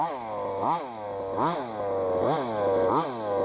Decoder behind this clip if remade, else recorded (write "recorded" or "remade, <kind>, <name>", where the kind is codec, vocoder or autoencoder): recorded